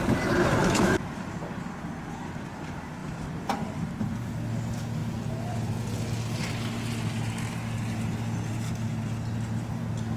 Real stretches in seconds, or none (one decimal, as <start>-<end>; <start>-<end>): 0.0-0.6; 1.2-10.2